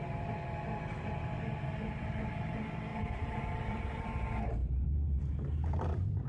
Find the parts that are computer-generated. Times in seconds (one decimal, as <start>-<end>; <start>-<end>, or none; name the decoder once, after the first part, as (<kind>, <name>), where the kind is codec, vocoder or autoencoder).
0.0-6.3 (vocoder, BigVGAN v2)